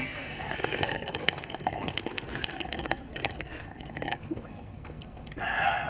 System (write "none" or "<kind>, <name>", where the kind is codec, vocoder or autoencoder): codec, SNAC